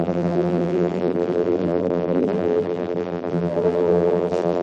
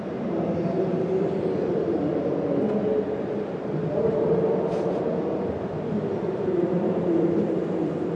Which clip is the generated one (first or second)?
first